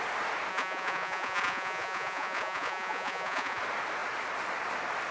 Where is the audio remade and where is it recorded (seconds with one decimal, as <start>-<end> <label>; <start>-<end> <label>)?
0.0-0.5 recorded; 0.5-3.6 remade; 3.6-5.1 recorded